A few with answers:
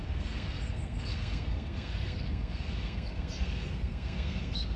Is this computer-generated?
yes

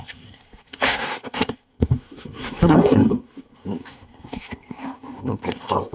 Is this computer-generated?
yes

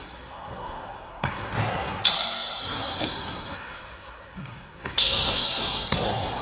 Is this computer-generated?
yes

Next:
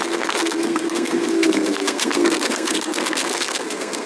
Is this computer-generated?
yes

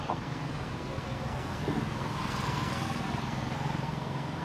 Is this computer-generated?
yes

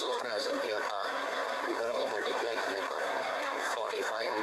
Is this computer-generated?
yes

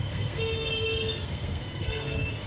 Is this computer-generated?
yes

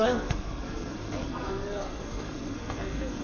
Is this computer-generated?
yes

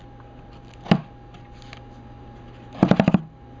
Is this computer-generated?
no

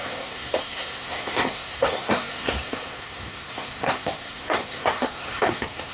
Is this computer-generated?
yes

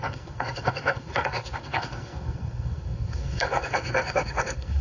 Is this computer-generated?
yes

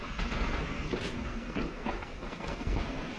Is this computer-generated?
yes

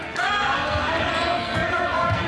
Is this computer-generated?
yes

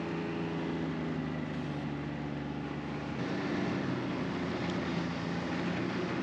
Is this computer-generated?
no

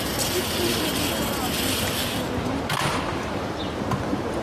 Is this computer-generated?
no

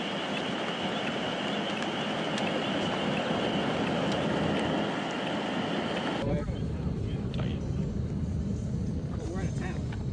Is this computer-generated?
no